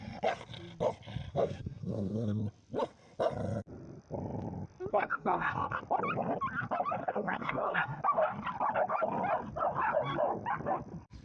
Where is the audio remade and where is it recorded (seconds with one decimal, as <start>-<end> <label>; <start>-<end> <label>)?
0.0-1.3 recorded; 1.3-2.4 remade; 2.4-4.9 recorded; 4.9-5.8 remade; 5.8-7.0 recorded; 7.0-8.0 remade; 8.0-11.2 recorded